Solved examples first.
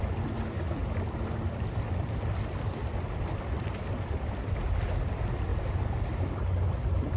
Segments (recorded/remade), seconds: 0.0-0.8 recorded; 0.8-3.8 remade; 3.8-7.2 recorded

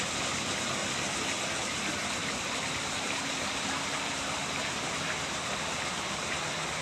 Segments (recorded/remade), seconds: 0.0-2.2 recorded; 2.2-6.3 remade; 6.3-6.8 recorded

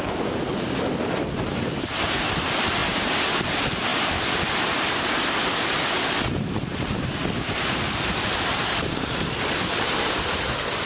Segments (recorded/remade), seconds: 0.0-2.8 remade; 2.8-3.4 recorded; 3.4-3.9 remade; 3.9-4.5 recorded; 4.5-10.9 remade

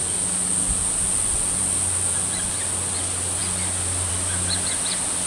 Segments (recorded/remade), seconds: 0.0-5.3 recorded